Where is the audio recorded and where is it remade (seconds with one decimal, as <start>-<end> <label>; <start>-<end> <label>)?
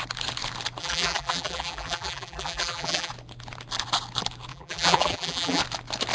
0.0-0.8 recorded; 0.8-3.1 remade; 3.1-4.5 recorded; 4.5-5.6 remade; 5.6-6.1 recorded